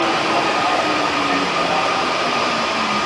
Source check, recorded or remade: remade